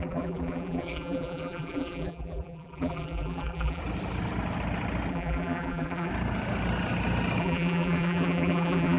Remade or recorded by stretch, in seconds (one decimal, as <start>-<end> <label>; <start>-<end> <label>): 0.0-3.8 remade; 3.8-5.1 recorded; 5.1-6.1 remade; 6.1-7.4 recorded; 7.4-9.0 remade